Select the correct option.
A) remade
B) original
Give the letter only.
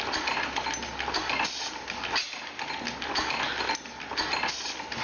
B